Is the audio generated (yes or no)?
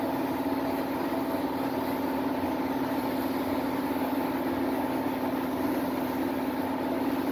no